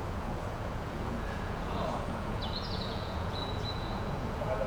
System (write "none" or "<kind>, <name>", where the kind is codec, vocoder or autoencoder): vocoder, Vocos